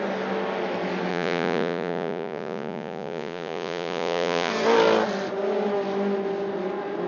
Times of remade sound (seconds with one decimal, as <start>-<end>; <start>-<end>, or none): 1.1-4.5

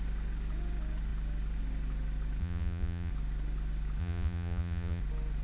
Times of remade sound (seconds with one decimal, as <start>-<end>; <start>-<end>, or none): 2.4-3.1; 4.0-5.0

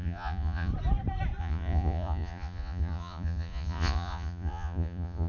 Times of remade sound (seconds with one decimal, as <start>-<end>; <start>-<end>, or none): 0.0-0.7; 1.4-5.3

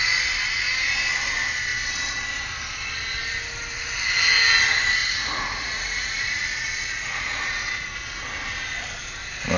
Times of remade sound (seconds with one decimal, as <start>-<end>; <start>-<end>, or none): 5.0-8.2

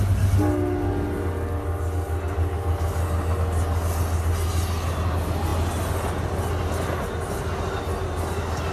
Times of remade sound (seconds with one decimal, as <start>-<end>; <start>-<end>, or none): none

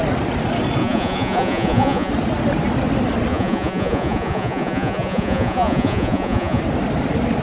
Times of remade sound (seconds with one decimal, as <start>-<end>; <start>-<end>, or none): 0.8-2.1; 3.3-6.6

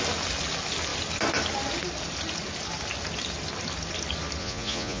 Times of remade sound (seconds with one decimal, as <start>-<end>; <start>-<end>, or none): 4.4-5.0